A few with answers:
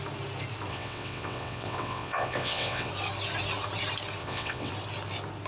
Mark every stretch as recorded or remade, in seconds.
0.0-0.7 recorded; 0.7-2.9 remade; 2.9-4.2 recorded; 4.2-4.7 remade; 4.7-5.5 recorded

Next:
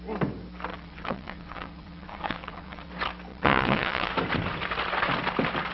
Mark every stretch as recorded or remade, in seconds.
0.0-0.7 recorded; 0.7-2.9 remade; 2.9-3.3 recorded; 3.3-4.1 remade; 4.1-5.7 recorded